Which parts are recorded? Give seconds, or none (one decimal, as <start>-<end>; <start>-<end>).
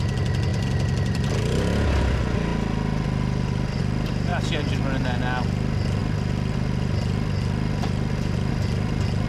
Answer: 0.0-0.5; 1.3-9.3